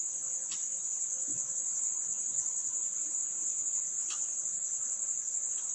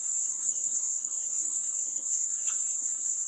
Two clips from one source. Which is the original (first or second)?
first